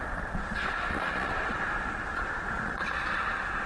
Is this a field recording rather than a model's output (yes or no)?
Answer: no